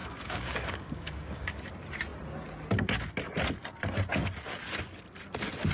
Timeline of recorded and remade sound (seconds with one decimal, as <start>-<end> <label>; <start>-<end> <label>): 0.0-1.6 remade; 1.6-5.7 recorded